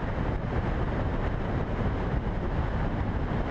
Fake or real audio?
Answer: fake